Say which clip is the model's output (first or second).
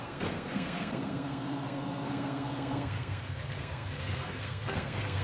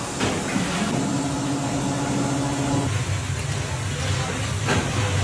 first